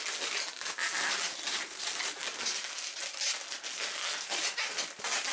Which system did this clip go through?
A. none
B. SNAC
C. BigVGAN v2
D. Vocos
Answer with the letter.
A